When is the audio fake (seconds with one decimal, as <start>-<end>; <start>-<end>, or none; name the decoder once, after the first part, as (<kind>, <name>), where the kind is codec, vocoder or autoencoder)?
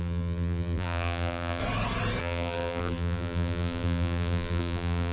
0.0-1.6 (vocoder, BigVGAN v2); 2.2-5.1